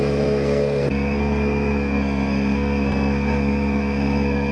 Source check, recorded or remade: remade